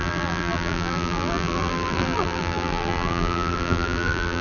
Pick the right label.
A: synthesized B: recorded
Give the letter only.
A